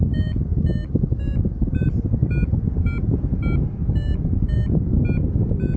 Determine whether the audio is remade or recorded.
recorded